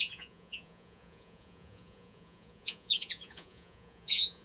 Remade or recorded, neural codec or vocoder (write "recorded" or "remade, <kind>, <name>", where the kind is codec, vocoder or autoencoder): remade, vocoder, Vocos